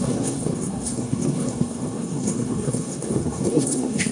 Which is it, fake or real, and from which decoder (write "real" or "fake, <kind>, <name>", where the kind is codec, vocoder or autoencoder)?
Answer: fake, codec, SNAC